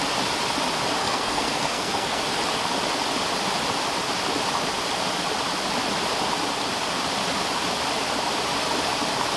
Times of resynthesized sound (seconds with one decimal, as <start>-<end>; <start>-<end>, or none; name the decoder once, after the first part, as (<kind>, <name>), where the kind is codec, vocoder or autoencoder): 1.0-2.2 (codec, SNAC)